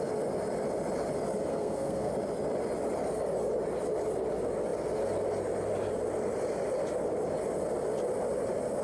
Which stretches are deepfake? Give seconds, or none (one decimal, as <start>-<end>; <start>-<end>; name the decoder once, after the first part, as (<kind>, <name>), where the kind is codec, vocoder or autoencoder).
1.5-2.1 (codec, SNAC)

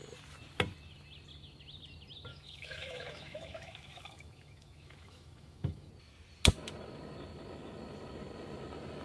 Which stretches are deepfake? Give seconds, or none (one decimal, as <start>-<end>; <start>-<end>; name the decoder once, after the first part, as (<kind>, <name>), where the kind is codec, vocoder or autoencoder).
2.3-5.9 (autoencoder, DAC-VAE)

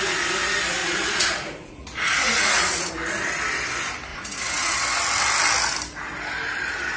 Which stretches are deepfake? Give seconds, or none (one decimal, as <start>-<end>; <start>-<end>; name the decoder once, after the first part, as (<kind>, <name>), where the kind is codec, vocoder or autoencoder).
0.8-2.9 (vocoder, Vocos); 4.1-4.8

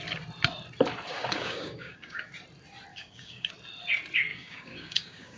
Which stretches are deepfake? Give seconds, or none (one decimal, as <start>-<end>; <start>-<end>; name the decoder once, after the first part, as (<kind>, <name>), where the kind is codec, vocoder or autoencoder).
1.1-2.3 (codec, DAC); 2.9-3.5; 4.3-5.4

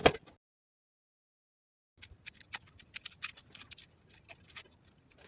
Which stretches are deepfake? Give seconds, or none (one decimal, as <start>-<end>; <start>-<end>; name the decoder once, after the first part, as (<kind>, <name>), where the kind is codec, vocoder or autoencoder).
none

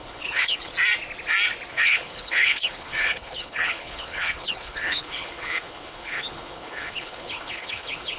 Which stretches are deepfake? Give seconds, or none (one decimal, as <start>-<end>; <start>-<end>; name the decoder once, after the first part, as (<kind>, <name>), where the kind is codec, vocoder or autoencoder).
0.0-0.7 (codec, HILCodec); 1.7-8.2

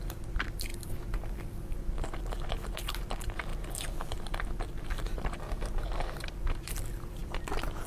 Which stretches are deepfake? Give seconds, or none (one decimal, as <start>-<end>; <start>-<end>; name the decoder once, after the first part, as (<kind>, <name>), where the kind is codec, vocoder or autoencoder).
0.0-7.9 (vocoder, BigVGAN v2)